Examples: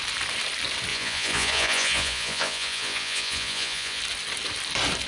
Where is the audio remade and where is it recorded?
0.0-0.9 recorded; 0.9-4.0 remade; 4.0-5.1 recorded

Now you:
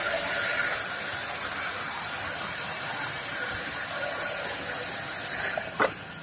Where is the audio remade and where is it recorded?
0.0-1.7 recorded; 1.7-4.4 remade; 4.4-6.2 recorded

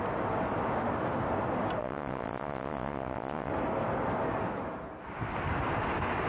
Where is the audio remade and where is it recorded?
0.0-1.8 recorded; 1.8-3.5 remade; 3.5-6.3 recorded

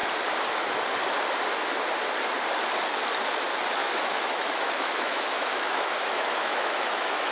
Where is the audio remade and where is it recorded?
0.0-3.8 recorded; 3.8-7.3 remade

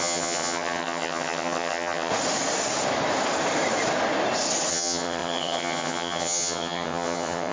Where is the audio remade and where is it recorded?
0.0-2.1 remade; 2.1-4.7 recorded; 4.7-7.5 remade

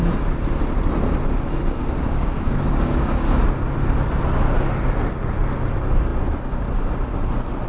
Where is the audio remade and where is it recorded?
0.0-1.8 recorded; 1.8-3.4 remade; 3.4-7.7 recorded

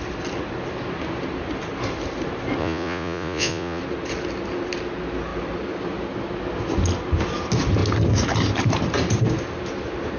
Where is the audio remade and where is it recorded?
0.0-2.6 recorded; 2.6-3.8 remade; 3.8-10.2 recorded